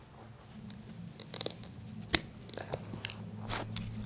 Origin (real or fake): real